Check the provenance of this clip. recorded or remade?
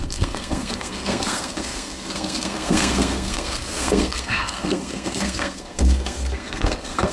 remade